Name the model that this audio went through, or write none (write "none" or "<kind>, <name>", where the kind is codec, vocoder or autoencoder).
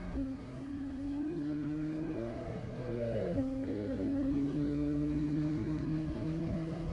codec, SNAC